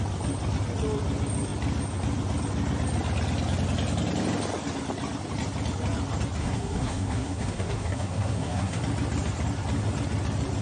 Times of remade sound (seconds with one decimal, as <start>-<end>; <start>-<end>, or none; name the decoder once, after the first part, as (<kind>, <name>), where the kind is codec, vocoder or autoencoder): 6.4-8.8 (codec, SNAC)